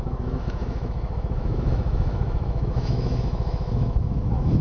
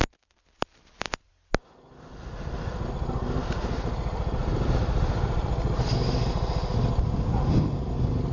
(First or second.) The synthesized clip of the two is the first